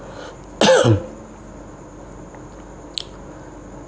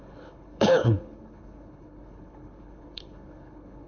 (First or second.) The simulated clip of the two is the second